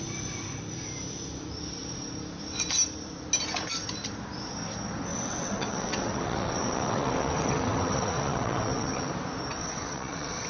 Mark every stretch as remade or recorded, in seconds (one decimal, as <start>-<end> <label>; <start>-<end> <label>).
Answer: 0.0-5.1 recorded; 5.1-9.1 remade; 9.1-9.6 recorded; 9.6-10.5 remade

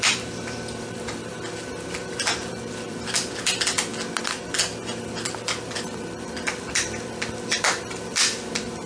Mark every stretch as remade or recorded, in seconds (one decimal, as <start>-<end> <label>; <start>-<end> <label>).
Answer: 0.0-1.3 remade; 1.3-2.1 recorded; 2.1-3.9 remade; 3.9-5.0 recorded; 5.0-8.9 remade

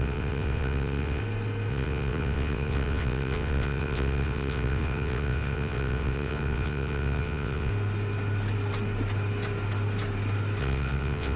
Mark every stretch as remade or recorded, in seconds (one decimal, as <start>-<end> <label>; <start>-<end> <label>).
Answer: 0.0-1.2 remade; 1.2-1.7 recorded; 1.7-7.7 remade; 7.7-10.6 recorded; 10.6-11.4 remade